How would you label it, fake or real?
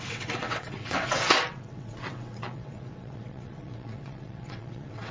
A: fake